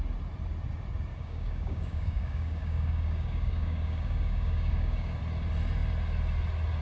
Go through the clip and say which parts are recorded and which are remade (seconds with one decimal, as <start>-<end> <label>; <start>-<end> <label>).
0.0-1.1 recorded; 1.1-5.2 remade; 5.2-6.8 recorded